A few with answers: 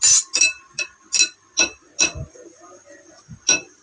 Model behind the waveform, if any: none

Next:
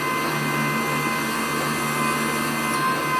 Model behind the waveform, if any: none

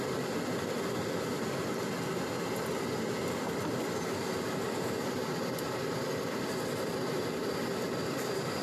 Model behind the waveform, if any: none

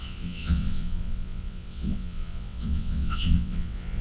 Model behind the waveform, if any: vocoder, WaveNeXt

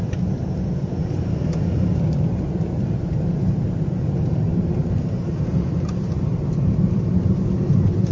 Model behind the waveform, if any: vocoder, BigVGAN v2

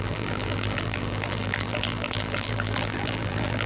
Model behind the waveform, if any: vocoder, BigVGAN v2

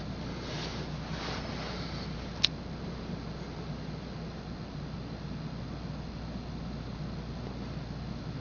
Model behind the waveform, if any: none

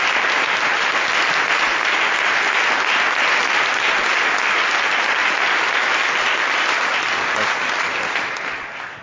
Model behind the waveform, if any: none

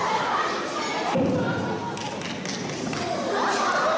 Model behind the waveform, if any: none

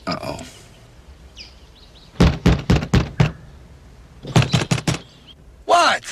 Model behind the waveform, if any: none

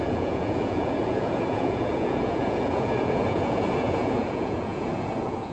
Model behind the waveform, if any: vocoder, Vocos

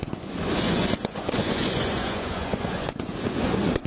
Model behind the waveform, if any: vocoder, Vocos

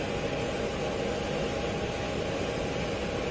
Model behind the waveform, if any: none